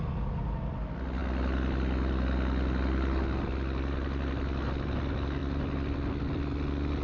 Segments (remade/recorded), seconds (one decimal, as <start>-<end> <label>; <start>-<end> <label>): 0.0-7.0 recorded